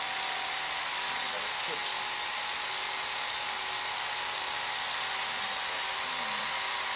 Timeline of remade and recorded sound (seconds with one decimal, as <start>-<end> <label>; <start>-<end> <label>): 0.0-7.0 recorded